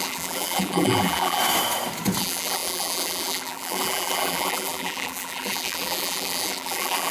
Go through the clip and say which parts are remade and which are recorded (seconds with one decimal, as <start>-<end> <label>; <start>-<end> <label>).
0.0-1.4 remade; 1.4-2.2 recorded; 2.2-7.1 remade